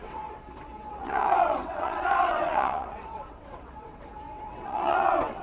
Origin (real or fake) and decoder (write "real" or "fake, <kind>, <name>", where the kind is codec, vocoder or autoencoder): fake, vocoder, WaveNeXt